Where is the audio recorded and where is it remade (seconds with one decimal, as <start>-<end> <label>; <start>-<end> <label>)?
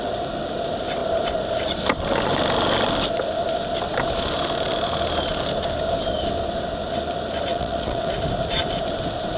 0.0-7.5 recorded; 7.5-8.1 remade; 8.1-9.4 recorded